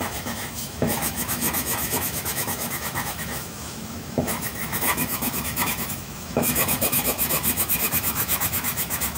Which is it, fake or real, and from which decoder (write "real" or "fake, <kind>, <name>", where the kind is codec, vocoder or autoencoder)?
fake, autoencoder, DAC-VAE